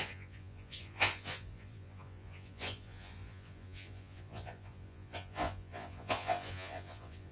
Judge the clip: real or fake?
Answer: fake